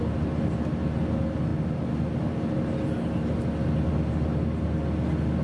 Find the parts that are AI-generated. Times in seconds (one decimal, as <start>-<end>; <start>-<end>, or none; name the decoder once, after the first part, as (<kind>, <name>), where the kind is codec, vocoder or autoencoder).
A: none